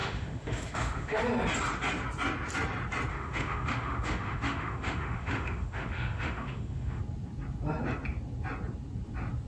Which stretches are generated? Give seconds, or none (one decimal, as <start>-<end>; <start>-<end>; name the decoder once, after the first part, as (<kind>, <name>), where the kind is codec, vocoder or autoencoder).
0.0-1.2 (autoencoder, DAC-VAE); 3.1-7.0